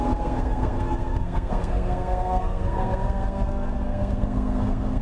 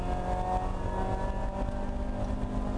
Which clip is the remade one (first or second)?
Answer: first